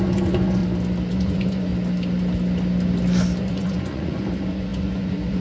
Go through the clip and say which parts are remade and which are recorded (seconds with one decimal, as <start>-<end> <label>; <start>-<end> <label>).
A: 0.0-0.6 remade; 0.6-1.1 recorded; 1.1-1.7 remade; 1.7-3.4 recorded; 3.4-5.4 remade